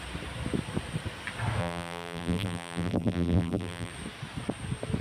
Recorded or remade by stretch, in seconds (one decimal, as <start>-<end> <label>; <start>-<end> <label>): 0.0-1.6 recorded; 1.6-3.9 remade; 3.9-5.0 recorded